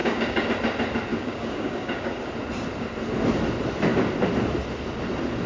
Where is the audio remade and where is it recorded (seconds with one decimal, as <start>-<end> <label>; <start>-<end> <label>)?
0.0-0.5 remade; 0.5-1.1 recorded; 1.1-2.2 remade; 2.2-5.5 recorded